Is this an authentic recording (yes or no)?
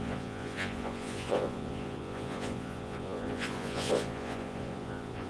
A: no